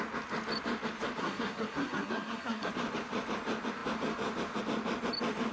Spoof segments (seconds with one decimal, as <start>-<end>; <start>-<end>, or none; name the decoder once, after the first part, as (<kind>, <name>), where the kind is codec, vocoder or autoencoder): 1.2-2.7 (codec, SNAC)